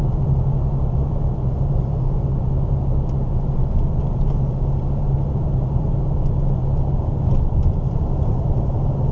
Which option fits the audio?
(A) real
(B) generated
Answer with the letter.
B